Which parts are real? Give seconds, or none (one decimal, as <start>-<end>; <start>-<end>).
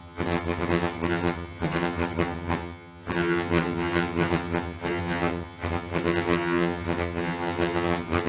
none